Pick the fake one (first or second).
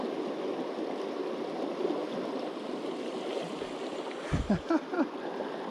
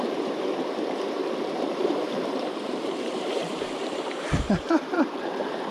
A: second